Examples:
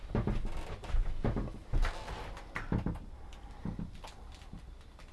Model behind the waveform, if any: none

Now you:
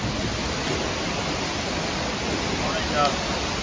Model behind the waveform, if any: none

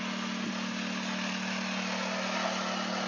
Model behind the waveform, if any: none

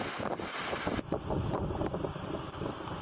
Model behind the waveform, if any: none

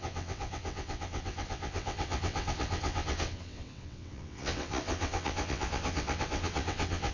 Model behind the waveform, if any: vocoder, WaveNeXt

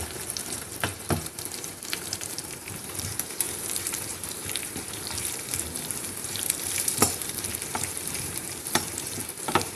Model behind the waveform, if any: vocoder, BigVGAN v2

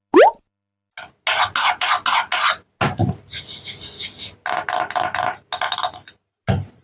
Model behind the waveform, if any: none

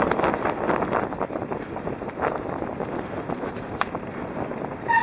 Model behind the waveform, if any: none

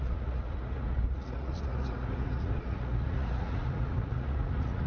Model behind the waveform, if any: vocoder, Vocos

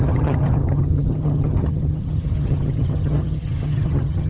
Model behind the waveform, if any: vocoder, HiFi-GAN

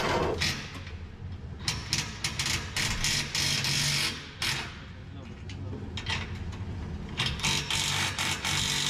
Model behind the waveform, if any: none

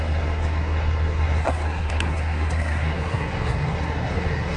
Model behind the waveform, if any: codec, SNAC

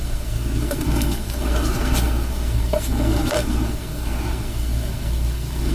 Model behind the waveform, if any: codec, SNAC